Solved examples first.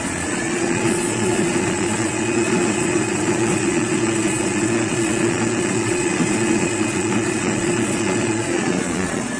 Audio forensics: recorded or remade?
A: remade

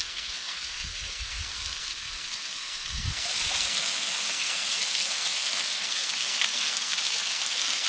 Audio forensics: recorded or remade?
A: remade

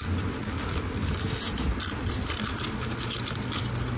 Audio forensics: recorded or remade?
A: recorded